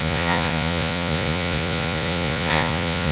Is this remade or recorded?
remade